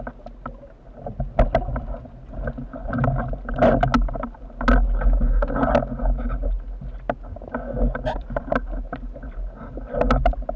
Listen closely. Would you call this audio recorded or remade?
recorded